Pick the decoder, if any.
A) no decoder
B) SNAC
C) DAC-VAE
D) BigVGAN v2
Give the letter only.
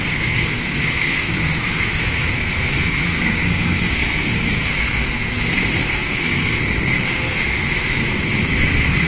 B